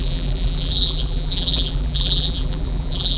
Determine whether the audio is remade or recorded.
remade